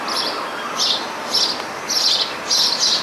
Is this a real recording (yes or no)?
yes